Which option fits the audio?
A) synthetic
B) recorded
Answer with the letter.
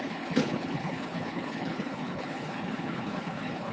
A